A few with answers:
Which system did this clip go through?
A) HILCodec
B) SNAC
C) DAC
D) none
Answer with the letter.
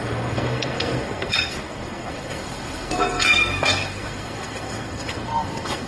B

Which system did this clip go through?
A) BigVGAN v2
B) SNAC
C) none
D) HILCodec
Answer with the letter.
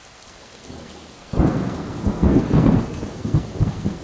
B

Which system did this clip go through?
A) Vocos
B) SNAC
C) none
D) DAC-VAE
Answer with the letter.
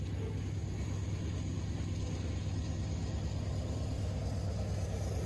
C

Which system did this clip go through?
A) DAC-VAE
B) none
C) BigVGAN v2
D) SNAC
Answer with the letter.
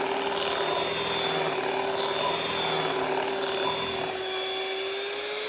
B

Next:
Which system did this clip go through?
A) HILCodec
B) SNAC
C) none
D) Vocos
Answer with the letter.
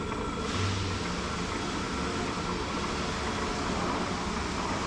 C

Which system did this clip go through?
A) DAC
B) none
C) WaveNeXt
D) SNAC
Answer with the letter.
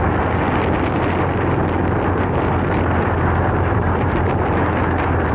B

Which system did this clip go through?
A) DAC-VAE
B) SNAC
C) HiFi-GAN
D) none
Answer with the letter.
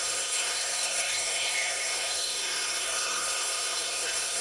B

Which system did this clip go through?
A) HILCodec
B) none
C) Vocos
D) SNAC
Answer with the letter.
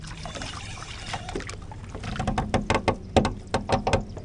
B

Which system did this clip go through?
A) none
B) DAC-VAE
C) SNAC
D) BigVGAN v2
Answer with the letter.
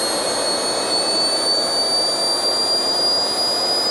A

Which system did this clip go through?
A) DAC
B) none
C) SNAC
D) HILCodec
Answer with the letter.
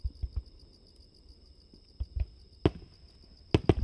B